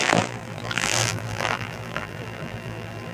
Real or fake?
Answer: fake